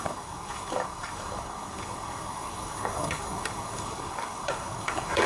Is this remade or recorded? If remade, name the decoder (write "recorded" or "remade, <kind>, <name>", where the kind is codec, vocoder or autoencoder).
remade, codec, DAC